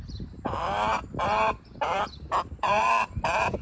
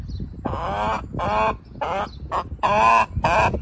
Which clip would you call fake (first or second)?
first